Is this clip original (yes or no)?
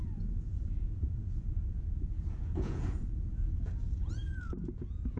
no